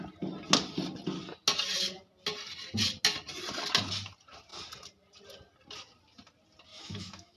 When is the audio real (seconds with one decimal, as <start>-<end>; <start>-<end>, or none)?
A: 0.0-6.7